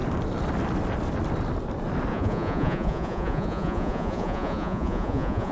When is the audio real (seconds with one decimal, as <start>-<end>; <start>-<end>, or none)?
0.0-2.1